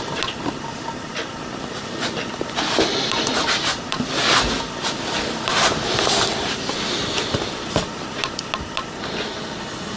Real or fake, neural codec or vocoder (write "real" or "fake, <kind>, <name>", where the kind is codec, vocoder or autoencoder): real